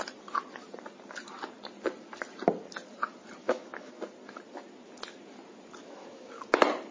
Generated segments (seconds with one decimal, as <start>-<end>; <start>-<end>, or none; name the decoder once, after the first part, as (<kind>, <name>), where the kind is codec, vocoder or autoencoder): 3.4-4.0 (autoencoder, DAC-VAE); 5.8-6.3